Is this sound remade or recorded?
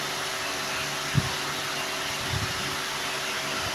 recorded